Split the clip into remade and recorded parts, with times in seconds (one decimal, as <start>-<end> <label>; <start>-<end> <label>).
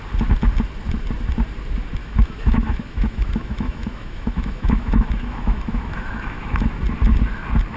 0.0-2.0 recorded; 2.0-6.7 remade; 6.7-7.8 recorded